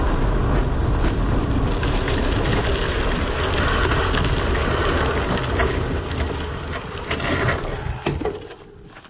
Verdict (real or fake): real